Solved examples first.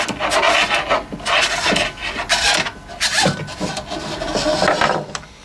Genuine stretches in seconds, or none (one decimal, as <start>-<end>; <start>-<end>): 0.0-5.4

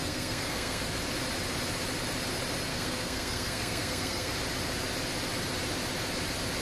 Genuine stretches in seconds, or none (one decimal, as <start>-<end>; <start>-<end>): 0.8-2.7; 4.3-6.6

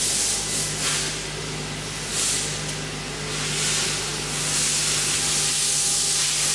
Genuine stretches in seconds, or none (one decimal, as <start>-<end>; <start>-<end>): 0.0-6.5

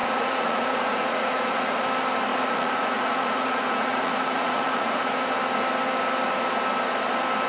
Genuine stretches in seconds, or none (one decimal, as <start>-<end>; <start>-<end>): 1.8-2.3; 5.2-7.5